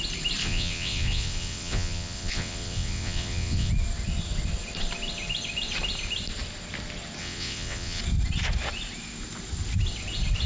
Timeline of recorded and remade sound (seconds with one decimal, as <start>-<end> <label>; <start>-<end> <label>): 0.0-0.4 recorded; 0.4-3.7 remade; 3.7-7.2 recorded; 7.2-8.0 remade; 8.0-10.5 recorded